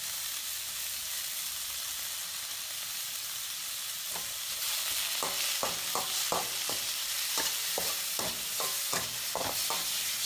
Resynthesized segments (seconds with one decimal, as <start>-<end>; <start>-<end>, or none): 1.0-2.3